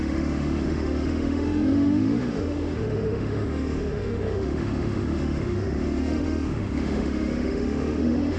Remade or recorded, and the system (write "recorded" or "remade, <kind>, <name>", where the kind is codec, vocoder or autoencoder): remade, autoencoder, DAC-VAE